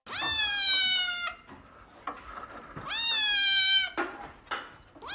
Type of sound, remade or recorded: recorded